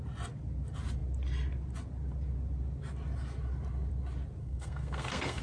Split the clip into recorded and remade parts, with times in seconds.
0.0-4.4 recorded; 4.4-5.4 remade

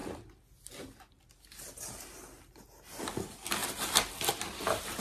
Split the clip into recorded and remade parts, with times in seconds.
0.0-5.0 recorded

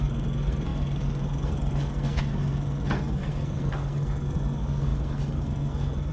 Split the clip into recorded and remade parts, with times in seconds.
0.0-6.1 remade